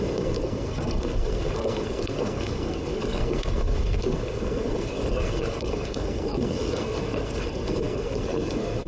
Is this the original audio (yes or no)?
no